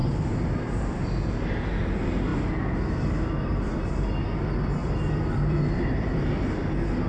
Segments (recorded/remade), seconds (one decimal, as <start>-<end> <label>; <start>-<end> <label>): 0.0-4.8 recorded; 4.8-6.6 remade; 6.6-7.1 recorded